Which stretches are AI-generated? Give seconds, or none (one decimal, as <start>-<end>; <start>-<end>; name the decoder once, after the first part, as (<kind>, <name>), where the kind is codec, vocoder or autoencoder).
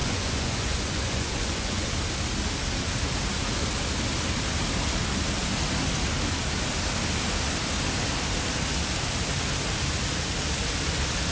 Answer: 0.0-1.9 (vocoder, Vocos)